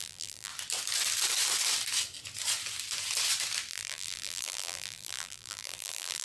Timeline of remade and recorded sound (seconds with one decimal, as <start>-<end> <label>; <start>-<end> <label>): 0.0-0.5 remade; 0.5-3.7 recorded; 3.7-6.2 remade